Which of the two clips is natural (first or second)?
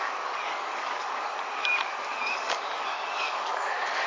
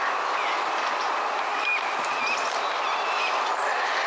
second